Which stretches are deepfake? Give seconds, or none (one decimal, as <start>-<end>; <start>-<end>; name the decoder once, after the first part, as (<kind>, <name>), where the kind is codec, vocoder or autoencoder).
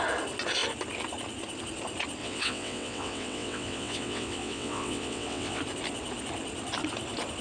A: 2.2-5.6 (vocoder, WaveNeXt)